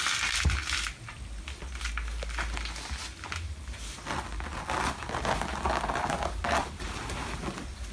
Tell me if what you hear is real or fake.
real